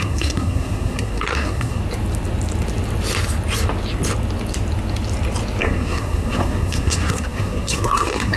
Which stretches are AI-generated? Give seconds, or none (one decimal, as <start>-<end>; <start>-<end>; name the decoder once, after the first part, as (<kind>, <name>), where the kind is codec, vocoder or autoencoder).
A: 0.0-1.8 (codec, SNAC); 5.6-8.4